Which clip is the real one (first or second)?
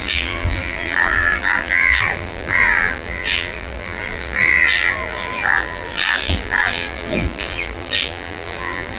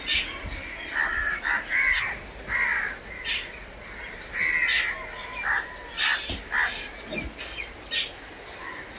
second